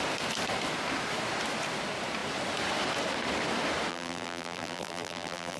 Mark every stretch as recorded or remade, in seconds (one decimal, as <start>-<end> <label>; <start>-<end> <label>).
0.0-3.9 recorded; 3.9-5.6 remade